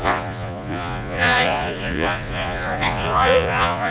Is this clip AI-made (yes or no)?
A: yes